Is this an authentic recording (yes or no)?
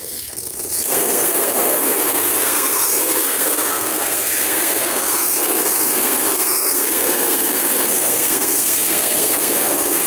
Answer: no